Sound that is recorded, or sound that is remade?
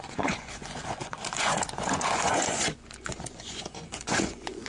remade